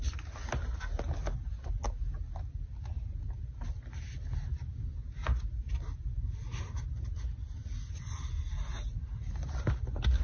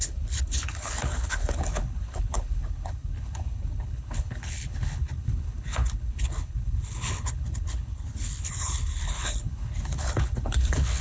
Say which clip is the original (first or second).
first